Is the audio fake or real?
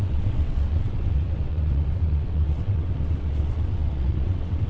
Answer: fake